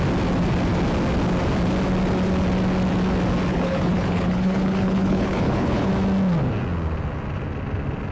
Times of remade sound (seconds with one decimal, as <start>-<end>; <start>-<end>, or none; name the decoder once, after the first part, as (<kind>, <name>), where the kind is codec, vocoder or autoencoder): 3.5-5.9 (codec, HILCodec)